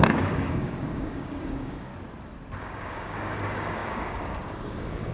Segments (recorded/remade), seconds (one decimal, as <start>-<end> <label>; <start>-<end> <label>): 0.0-1.9 remade; 1.9-2.6 recorded; 2.6-5.1 remade